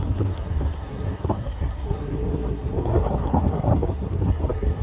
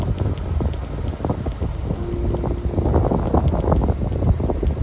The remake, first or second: first